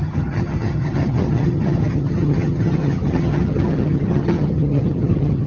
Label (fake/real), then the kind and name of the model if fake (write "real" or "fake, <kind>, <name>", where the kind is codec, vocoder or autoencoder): fake, vocoder, HiFi-GAN